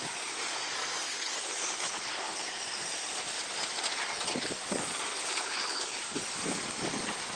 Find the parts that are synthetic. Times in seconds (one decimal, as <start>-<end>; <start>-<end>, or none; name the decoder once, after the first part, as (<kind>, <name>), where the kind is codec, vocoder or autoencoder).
1.1-2.4 (codec, HILCodec); 5.1-6.0